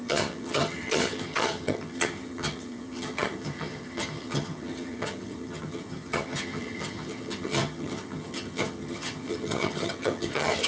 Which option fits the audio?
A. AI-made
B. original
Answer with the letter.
A